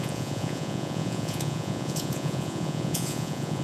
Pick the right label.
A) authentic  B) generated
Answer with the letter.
B